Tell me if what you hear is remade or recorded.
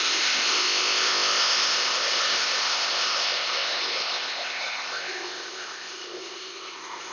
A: remade